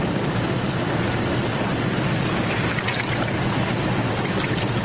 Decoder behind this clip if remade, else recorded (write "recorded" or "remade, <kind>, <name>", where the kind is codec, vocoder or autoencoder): recorded